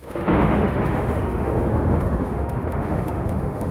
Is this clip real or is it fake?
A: fake